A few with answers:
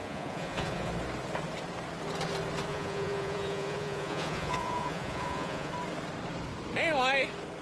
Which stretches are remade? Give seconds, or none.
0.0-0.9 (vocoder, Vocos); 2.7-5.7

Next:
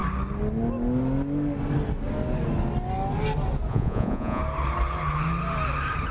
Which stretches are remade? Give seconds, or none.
3.7-4.4 (vocoder, Vocos)

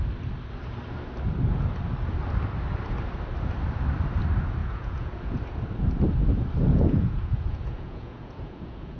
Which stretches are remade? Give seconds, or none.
4.6-5.4 (vocoder, Vocos); 6.7-9.0

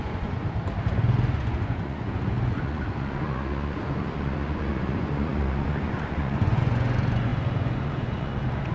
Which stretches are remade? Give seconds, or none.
0.0-0.4 (vocoder, Vocos); 0.9-8.7

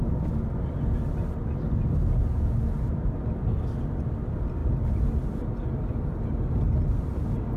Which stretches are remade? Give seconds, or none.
none

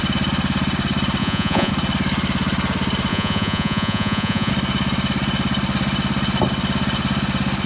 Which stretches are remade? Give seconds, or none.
1.2-1.7 (vocoder, Vocos); 3.1-4.5